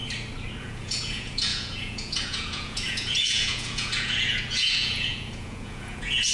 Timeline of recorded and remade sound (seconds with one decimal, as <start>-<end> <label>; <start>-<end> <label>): 0.0-0.6 recorded; 0.6-6.3 remade